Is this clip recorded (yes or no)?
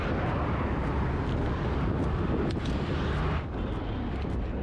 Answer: yes